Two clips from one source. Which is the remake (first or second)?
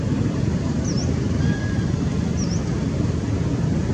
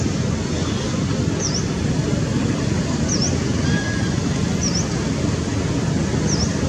first